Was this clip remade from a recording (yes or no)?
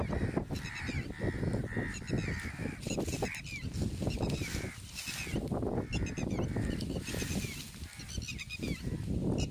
no